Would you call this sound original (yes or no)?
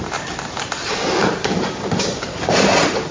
no